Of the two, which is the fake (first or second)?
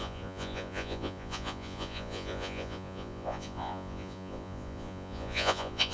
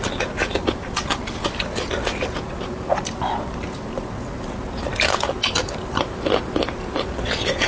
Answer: first